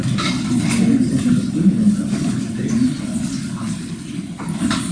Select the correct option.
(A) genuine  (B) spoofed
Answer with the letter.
A